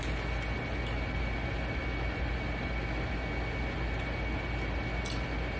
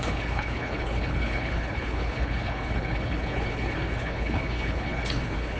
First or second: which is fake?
second